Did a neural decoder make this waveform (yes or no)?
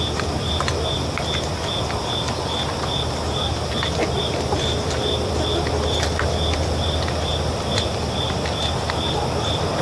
no